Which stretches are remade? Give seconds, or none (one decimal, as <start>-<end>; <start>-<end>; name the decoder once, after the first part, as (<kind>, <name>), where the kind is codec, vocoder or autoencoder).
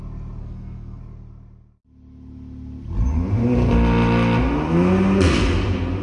0.4-1.0 (codec, SNAC)